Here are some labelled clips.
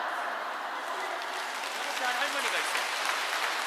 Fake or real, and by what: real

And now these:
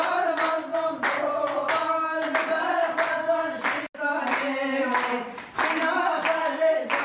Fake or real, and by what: real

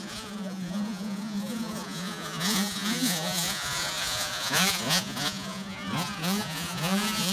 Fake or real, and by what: fake, vocoder, Vocos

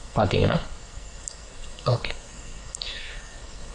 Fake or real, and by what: fake, codec, SNAC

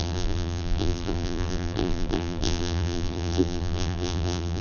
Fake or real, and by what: fake, vocoder, BigVGAN v2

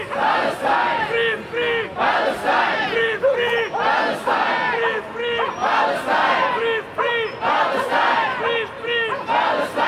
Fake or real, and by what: real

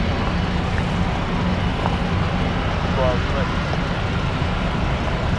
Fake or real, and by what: real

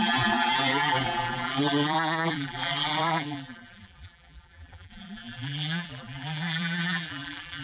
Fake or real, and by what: fake, vocoder, BigVGAN v2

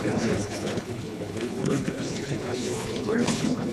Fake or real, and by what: fake, codec, HILCodec